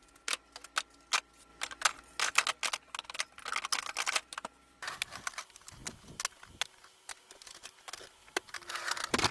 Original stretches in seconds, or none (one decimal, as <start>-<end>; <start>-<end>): 0.0-9.3